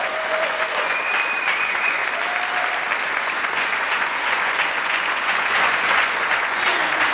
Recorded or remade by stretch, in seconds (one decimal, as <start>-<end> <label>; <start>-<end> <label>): 0.0-1.1 remade; 1.1-1.6 recorded; 1.6-2.0 remade; 2.0-3.1 recorded; 3.1-7.1 remade